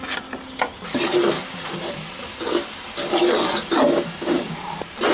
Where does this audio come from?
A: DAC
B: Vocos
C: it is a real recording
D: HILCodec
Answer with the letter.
C